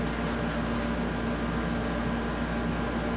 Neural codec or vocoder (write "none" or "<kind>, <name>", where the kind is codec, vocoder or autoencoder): none